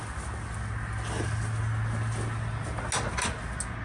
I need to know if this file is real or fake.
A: real